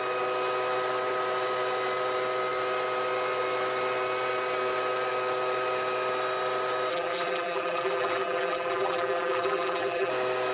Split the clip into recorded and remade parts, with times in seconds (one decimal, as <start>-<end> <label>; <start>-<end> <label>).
0.0-6.9 recorded; 6.9-10.1 remade; 10.1-10.5 recorded

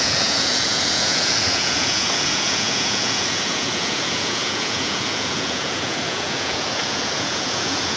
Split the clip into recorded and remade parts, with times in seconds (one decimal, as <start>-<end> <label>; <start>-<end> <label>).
0.0-8.0 remade